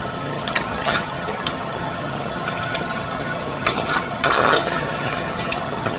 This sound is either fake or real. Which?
fake